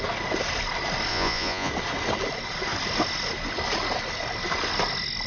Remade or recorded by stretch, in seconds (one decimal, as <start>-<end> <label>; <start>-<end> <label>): 0.0-1.1 recorded; 1.1-1.7 remade; 1.7-5.3 recorded